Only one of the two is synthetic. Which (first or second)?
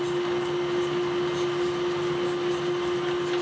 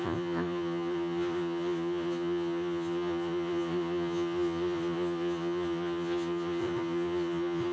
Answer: second